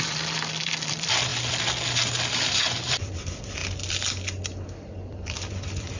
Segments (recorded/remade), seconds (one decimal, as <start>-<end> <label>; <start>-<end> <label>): 0.0-1.3 remade; 1.3-2.3 recorded; 2.3-3.6 remade; 3.6-5.3 recorded; 5.3-6.0 remade